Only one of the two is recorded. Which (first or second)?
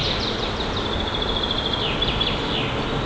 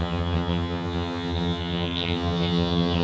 first